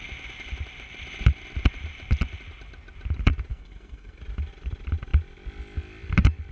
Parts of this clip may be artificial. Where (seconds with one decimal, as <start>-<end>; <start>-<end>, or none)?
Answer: 3.5-4.2